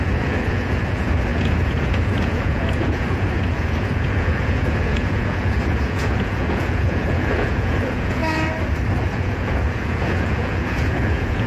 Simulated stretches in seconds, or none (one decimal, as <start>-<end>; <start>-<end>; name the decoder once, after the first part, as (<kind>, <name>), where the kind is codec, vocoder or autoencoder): 0.0-8.2 (vocoder, Vocos); 9.0-11.5